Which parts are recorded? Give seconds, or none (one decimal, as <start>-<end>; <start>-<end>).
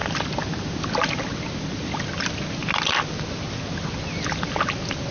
0.0-5.1